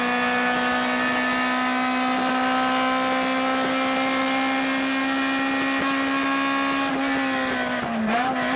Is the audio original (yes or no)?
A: yes